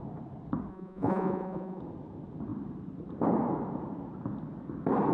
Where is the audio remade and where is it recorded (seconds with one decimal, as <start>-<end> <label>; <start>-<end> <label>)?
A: 0.0-0.7 recorded; 0.7-1.8 remade; 1.8-5.1 recorded